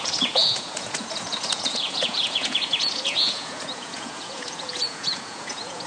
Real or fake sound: fake